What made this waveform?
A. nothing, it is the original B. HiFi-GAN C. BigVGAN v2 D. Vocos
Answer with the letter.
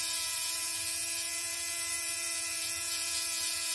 D